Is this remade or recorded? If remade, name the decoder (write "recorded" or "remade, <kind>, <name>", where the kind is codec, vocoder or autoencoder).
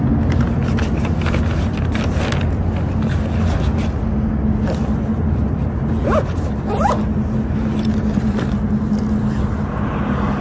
recorded